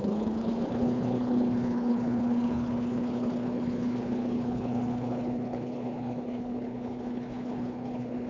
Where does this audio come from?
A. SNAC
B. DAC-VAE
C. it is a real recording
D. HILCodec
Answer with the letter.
D